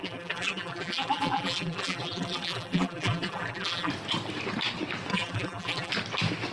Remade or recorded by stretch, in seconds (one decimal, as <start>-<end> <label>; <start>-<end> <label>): 0.0-3.9 remade; 3.9-5.1 recorded; 5.1-5.9 remade; 5.9-6.5 recorded